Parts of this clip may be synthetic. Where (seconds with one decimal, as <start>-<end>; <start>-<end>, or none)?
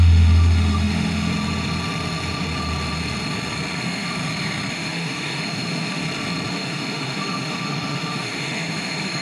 0.0-1.3; 3.8-4.2; 4.7-6.0; 6.5-9.2